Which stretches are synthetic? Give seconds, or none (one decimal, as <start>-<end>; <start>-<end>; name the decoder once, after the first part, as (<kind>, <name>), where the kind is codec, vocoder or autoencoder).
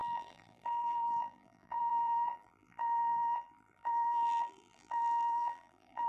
0.0-6.1 (vocoder, BigVGAN v2)